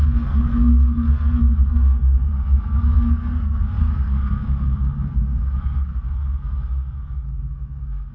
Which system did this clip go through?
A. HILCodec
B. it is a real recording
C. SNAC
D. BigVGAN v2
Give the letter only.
C